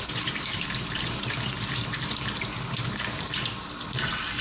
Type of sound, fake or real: fake